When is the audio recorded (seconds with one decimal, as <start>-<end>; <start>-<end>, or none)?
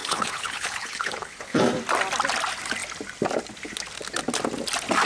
1.6-5.1